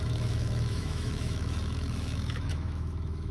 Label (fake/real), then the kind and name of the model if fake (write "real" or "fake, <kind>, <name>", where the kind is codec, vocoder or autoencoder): fake, autoencoder, DAC-VAE